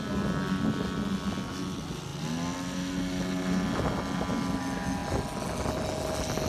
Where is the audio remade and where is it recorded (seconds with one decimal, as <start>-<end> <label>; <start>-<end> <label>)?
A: 0.0-6.5 recorded